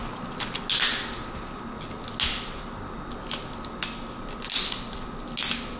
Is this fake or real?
real